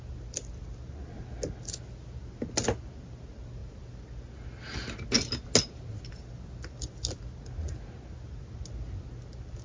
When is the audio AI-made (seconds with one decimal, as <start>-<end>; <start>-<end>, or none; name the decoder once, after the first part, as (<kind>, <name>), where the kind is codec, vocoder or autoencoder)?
none